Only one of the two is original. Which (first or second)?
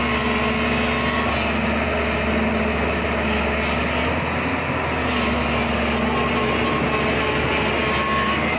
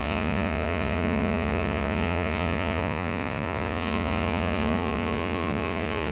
first